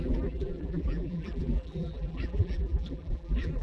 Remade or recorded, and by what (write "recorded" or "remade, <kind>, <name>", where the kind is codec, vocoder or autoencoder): remade, vocoder, BigVGAN v2